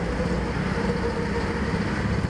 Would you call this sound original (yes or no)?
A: yes